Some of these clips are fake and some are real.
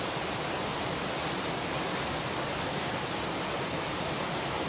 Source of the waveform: real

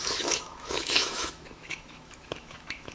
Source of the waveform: fake